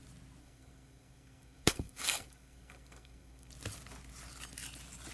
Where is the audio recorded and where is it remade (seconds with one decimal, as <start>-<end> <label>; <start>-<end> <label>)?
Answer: 0.0-0.4 recorded; 0.4-3.5 remade; 3.5-5.1 recorded